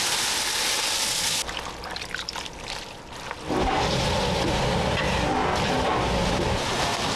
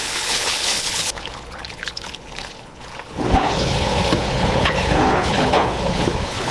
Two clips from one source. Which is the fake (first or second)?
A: second